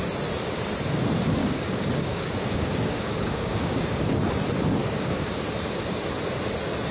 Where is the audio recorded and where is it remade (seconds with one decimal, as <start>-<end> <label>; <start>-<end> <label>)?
0.0-1.4 recorded; 1.4-4.0 remade; 4.0-4.8 recorded; 4.8-5.3 remade; 5.3-6.9 recorded